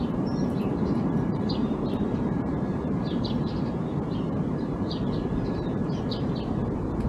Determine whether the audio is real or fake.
fake